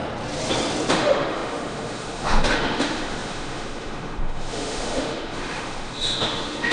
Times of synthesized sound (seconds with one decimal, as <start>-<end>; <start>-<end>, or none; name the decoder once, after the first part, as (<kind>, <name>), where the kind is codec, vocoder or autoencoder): 0.9-6.7 (autoencoder, DAC-VAE)